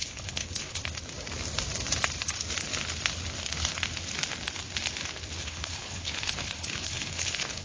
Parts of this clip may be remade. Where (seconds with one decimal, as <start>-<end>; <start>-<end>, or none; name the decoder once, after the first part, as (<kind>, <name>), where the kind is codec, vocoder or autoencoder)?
0.0-0.8 (codec, HILCodec); 5.4-7.6